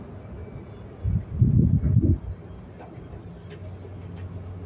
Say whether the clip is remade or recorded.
recorded